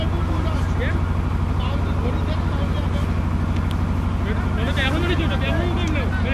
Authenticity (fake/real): real